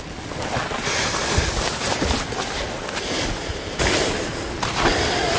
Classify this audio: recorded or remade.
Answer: recorded